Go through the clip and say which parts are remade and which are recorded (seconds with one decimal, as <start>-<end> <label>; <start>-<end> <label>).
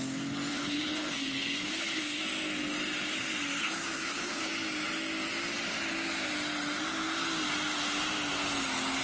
0.0-0.5 recorded; 0.5-2.2 remade; 2.2-3.6 recorded; 3.6-4.5 remade; 4.5-9.0 recorded